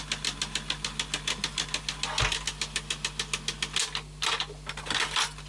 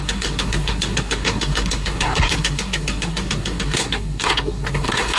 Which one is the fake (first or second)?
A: second